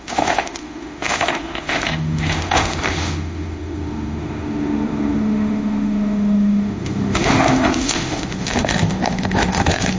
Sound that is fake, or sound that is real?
fake